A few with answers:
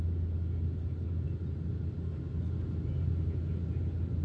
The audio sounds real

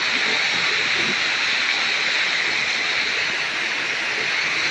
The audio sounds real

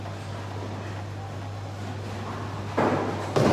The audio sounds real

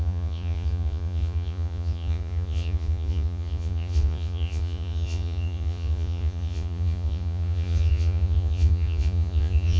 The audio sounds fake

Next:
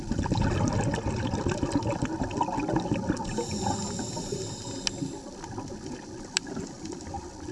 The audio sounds real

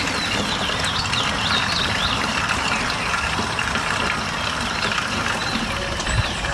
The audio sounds real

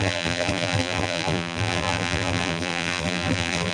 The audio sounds fake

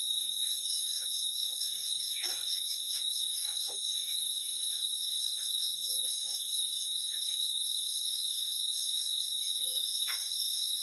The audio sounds fake